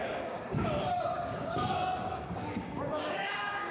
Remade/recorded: remade